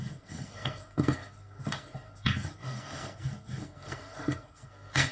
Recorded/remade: remade